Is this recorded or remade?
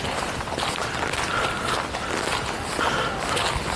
recorded